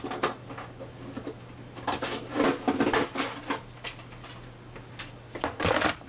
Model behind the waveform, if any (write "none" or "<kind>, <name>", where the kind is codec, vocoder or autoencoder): none